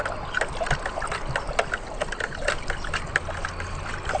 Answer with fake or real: real